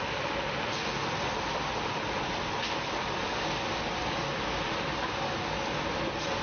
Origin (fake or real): real